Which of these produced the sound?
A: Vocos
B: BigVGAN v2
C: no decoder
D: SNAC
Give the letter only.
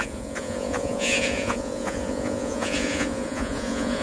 A